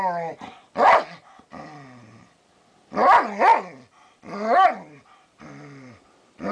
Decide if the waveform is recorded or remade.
recorded